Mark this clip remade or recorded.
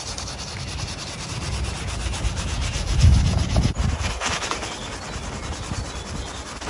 recorded